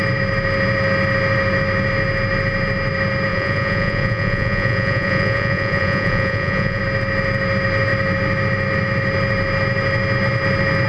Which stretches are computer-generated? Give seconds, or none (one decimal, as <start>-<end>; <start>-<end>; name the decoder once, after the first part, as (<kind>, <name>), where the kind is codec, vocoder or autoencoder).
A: 3.3-6.8 (vocoder, Vocos)